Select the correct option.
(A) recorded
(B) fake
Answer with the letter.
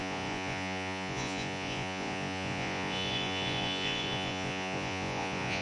B